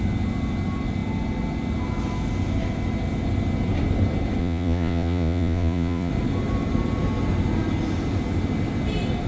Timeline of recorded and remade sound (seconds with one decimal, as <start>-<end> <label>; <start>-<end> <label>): 0.0-4.4 recorded; 4.4-6.1 remade; 6.1-9.3 recorded